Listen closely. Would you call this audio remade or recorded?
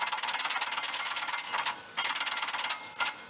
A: recorded